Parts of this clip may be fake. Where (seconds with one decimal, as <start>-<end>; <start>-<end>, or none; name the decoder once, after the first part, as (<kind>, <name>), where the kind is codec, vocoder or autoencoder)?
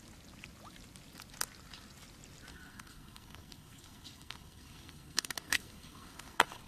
2.5-6.7 (codec, SNAC)